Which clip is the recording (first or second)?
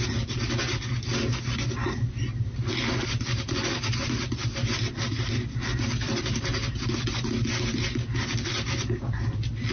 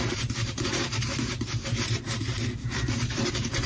first